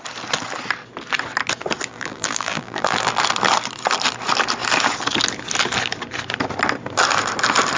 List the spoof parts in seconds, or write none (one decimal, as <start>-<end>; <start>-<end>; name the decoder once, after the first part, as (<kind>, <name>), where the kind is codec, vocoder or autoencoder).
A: 1.9-3.2 (vocoder, BigVGAN v2)